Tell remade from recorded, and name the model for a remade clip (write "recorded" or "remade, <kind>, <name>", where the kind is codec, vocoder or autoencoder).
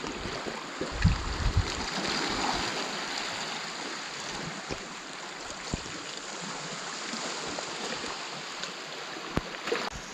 recorded